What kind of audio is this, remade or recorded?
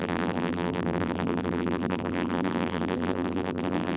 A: remade